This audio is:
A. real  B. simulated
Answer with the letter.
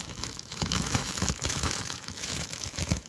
B